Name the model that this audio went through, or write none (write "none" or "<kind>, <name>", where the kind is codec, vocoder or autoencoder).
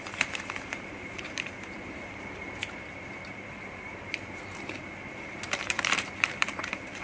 vocoder, BigVGAN v2